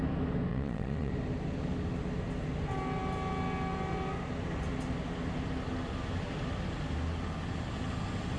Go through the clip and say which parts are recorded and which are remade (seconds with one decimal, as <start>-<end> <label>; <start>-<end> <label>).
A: 0.0-0.5 recorded; 0.5-1.1 remade; 1.1-8.4 recorded